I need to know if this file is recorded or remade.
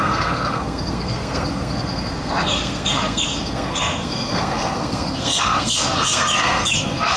remade